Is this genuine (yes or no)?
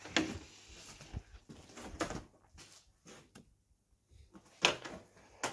yes